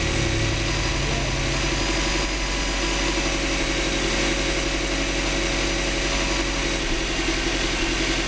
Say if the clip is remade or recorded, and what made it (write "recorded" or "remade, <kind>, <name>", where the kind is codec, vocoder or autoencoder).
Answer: recorded